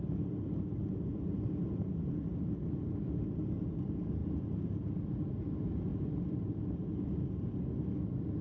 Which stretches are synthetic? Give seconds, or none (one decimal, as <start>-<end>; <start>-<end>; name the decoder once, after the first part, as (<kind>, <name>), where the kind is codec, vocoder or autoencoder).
none